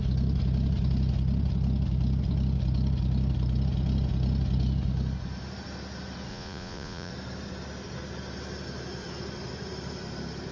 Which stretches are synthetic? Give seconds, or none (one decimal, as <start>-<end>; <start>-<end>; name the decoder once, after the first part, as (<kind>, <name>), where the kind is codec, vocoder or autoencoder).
6.3-7.1 (vocoder, Vocos)